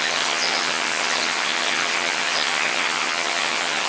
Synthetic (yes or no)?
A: yes